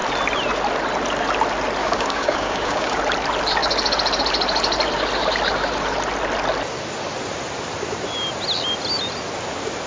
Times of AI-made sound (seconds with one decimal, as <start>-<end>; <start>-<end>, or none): 1.8-3.0